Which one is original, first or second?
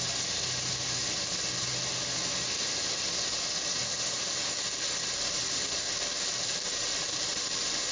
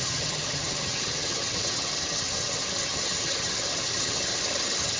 first